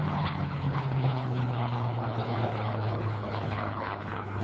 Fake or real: fake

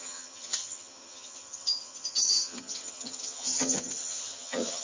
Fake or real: fake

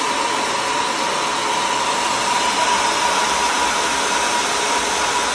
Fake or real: real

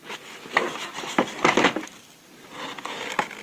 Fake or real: real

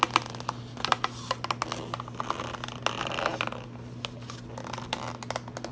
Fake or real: real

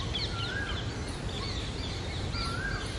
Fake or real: real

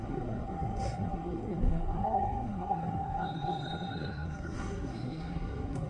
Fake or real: fake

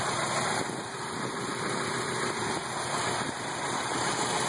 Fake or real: real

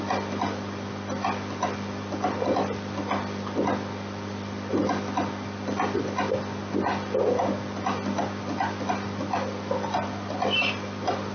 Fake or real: real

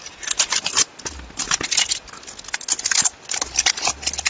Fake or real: real